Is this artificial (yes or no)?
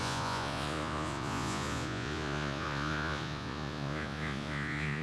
yes